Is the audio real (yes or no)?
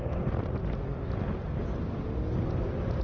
yes